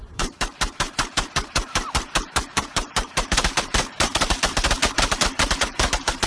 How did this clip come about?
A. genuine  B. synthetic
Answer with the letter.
B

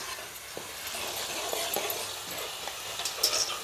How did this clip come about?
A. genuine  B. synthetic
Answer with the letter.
A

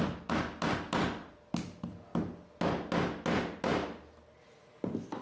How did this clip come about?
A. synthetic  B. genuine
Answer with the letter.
B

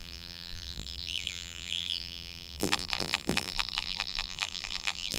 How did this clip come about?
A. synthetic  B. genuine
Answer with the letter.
A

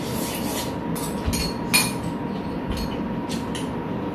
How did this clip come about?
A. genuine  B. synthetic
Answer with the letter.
A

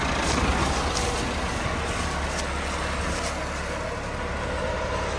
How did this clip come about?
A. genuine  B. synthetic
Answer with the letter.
A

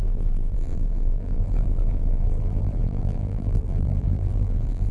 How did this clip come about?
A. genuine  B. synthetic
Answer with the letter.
B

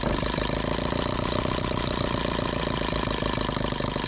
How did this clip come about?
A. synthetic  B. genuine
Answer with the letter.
B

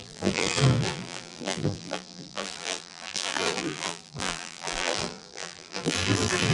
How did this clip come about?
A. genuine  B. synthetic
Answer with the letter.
B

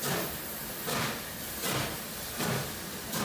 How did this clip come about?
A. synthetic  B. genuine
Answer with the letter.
B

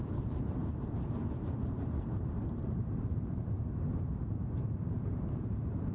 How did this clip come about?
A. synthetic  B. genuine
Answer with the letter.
A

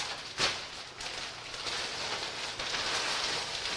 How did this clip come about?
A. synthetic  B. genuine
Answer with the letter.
B